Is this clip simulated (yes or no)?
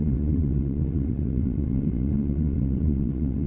yes